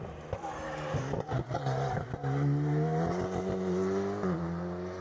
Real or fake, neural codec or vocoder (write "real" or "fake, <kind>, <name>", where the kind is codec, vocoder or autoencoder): real